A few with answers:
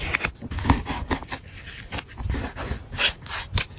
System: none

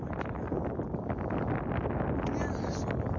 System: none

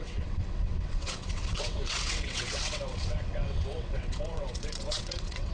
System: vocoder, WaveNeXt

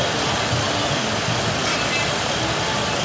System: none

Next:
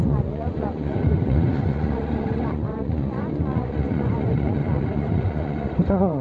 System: vocoder, Vocos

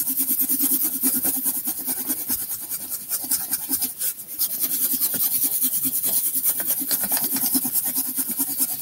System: none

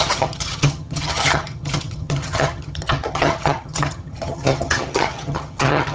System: vocoder, HiFi-GAN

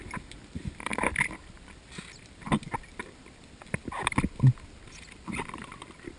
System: none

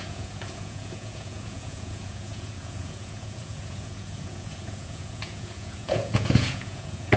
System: vocoder, Vocos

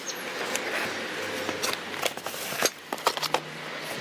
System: none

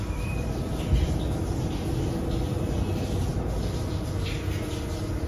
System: none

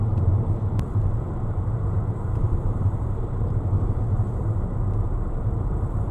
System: vocoder, BigVGAN v2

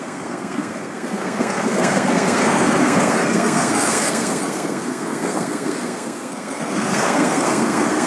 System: codec, SNAC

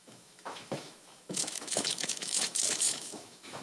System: autoencoder, DAC-VAE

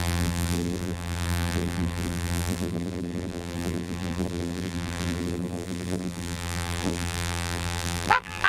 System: vocoder, BigVGAN v2